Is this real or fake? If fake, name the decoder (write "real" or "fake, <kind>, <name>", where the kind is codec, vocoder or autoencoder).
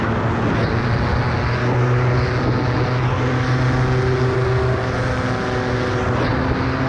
real